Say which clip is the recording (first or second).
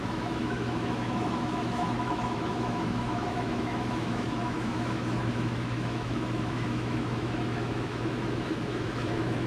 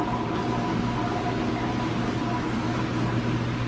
second